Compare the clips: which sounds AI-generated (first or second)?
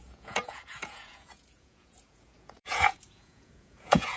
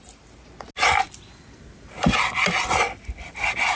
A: first